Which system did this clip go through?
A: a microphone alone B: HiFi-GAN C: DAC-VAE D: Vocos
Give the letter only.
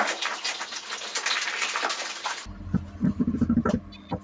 A